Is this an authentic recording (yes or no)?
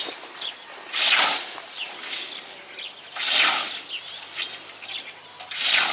yes